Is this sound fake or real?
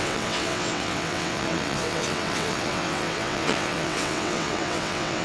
fake